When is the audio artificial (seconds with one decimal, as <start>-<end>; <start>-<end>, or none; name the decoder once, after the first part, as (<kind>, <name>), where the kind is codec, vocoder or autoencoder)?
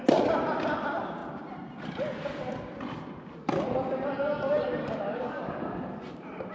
4.8-6.0 (codec, DAC)